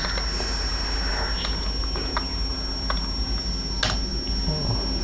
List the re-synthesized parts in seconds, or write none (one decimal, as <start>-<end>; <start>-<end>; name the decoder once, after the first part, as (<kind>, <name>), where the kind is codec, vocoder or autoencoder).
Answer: none

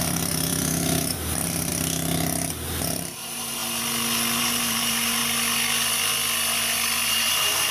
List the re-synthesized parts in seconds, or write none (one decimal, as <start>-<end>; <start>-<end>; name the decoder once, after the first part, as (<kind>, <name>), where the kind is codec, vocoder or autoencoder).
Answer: 0.0-1.7 (vocoder, BigVGAN v2); 2.5-3.6; 4.4-5.2; 7.1-7.7

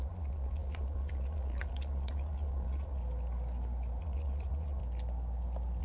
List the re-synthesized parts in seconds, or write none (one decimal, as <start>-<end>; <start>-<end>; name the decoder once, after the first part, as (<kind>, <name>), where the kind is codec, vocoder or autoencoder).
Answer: 0.0-3.0 (vocoder, Vocos); 4.0-4.8